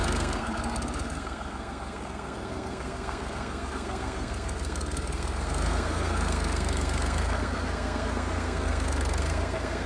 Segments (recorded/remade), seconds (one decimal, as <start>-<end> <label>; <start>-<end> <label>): 0.0-9.9 remade